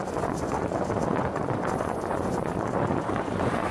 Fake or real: fake